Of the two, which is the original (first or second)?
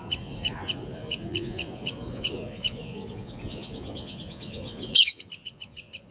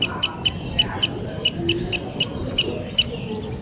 second